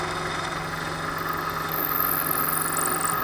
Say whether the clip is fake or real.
real